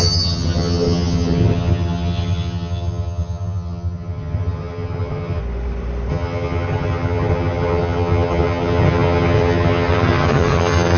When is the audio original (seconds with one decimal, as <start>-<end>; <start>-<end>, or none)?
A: 5.4-6.1